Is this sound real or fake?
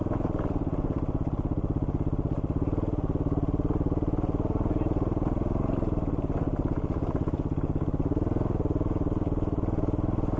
real